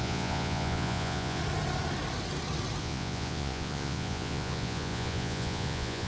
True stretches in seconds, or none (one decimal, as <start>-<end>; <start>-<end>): 1.4-2.8